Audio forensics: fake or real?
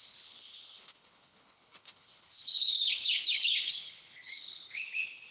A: fake